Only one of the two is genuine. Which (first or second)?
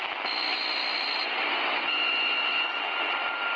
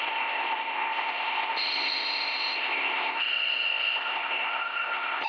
first